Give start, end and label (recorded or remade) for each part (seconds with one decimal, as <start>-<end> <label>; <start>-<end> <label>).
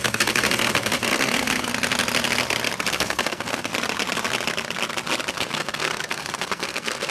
0.0-1.7 remade; 1.7-2.9 recorded; 2.9-3.7 remade; 3.7-5.3 recorded; 5.3-7.1 remade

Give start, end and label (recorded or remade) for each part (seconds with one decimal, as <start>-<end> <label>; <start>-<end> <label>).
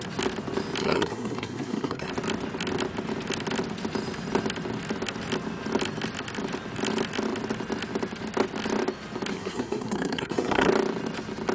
0.0-0.8 recorded; 0.8-2.1 remade; 2.1-9.3 recorded; 9.3-10.7 remade; 10.7-11.5 recorded